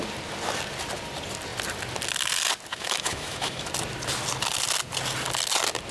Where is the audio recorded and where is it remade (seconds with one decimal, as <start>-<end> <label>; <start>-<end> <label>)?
0.0-2.7 recorded; 2.7-3.7 remade; 3.7-5.9 recorded